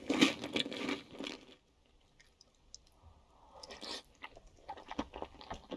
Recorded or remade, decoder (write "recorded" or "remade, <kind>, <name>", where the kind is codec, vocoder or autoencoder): recorded